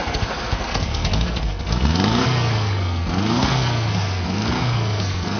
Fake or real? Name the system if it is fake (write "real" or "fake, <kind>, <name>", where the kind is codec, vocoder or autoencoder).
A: fake, codec, SNAC